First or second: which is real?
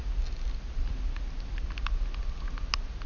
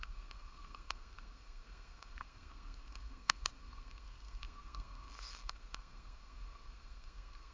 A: first